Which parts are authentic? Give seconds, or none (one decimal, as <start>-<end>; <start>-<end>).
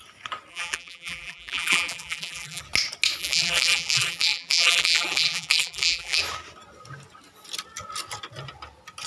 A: 0.0-0.5; 2.6-3.2; 6.2-9.1